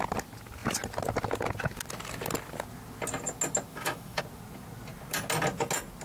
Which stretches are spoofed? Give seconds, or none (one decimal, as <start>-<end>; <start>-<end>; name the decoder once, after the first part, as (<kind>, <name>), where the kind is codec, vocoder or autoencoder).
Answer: 3.7-4.2 (autoencoder, DAC-VAE)